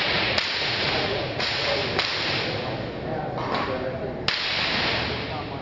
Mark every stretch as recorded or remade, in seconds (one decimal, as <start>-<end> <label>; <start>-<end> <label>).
0.0-1.8 remade; 1.8-5.6 recorded